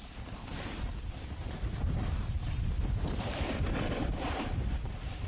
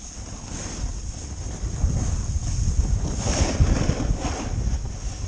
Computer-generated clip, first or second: first